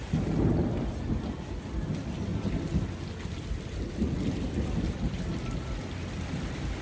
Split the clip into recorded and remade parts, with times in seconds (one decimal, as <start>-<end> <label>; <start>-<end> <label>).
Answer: 0.0-6.8 recorded